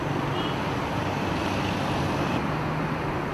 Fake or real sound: real